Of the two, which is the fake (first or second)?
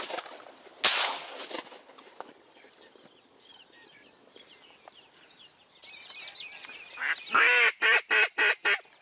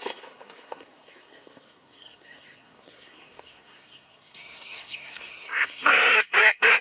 second